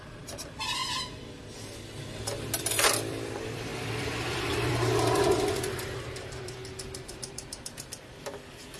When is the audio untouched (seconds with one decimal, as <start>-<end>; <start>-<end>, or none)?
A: 0.8-2.6